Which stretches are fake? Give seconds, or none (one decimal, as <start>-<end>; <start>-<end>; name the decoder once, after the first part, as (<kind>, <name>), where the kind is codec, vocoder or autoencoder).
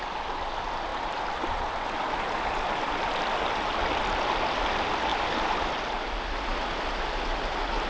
none